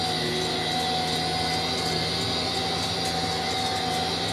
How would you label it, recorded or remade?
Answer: recorded